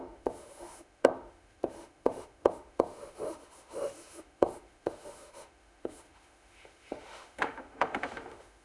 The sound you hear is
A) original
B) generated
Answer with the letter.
B